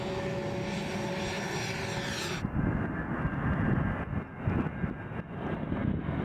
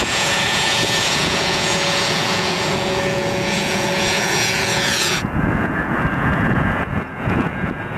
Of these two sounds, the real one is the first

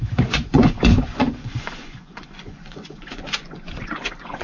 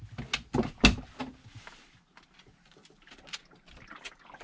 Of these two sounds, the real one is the second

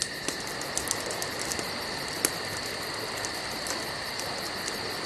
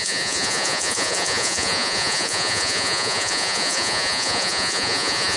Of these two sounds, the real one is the first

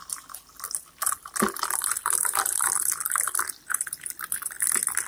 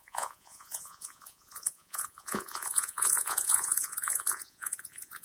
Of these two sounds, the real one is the first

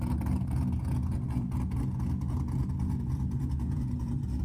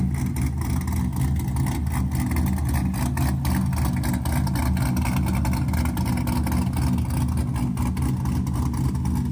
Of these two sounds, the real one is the second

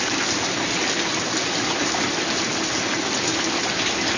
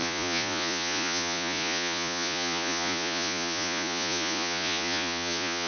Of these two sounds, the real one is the first